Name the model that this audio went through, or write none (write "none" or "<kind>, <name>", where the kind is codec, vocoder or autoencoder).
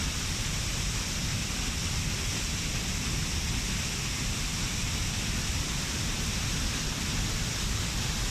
none